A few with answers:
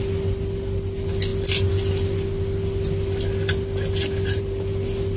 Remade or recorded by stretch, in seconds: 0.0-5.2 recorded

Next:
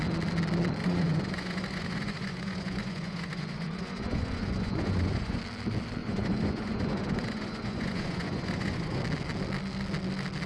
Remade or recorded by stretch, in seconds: 0.0-0.8 recorded; 0.8-5.4 remade; 5.4-6.0 recorded; 6.0-9.0 remade; 9.0-10.5 recorded

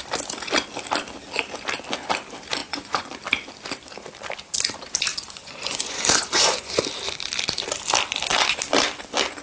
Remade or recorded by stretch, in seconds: 0.0-2.6 recorded; 2.6-3.1 remade; 3.1-5.1 recorded; 5.1-6.8 remade; 6.8-9.4 recorded

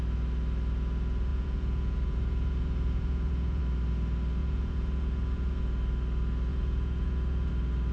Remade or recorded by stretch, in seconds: 0.0-1.3 recorded; 1.3-3.6 remade; 3.6-4.4 recorded; 4.4-5.6 remade; 5.6-6.5 recorded; 6.5-7.5 remade; 7.5-7.9 recorded

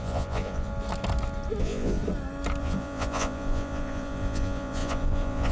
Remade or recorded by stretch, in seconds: 0.0-0.7 remade; 0.7-1.6 recorded; 1.6-2.0 remade; 2.0-2.6 recorded; 2.6-5.5 remade

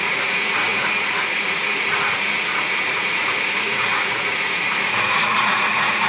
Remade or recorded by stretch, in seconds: 0.0-6.1 remade

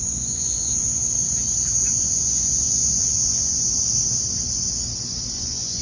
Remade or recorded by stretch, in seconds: 0.0-1.0 remade; 1.0-1.9 recorded; 1.9-3.8 remade; 3.8-5.3 recorded; 5.3-5.8 remade

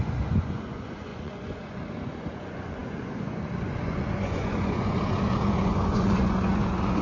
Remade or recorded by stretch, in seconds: 0.0-7.0 remade